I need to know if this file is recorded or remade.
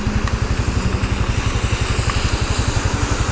recorded